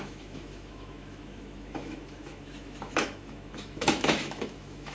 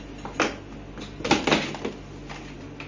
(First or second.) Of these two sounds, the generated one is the first